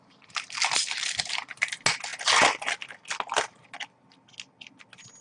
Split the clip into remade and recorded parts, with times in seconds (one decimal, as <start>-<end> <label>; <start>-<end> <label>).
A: 0.0-5.2 recorded